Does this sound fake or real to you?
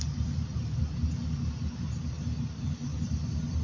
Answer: real